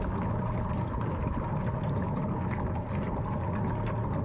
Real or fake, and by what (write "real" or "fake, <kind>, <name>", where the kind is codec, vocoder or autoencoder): real